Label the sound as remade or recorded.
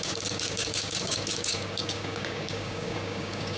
remade